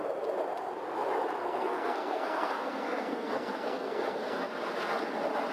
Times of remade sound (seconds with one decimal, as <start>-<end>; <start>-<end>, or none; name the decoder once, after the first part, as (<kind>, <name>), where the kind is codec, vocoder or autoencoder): 1.4-4.5 (codec, SNAC)